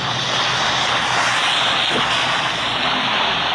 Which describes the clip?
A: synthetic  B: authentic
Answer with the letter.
B